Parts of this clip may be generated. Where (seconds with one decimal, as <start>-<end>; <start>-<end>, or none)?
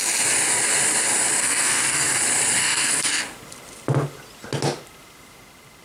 1.4-2.2; 2.6-3.2